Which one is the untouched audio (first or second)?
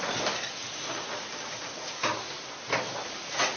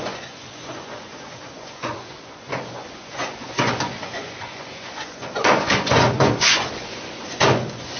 first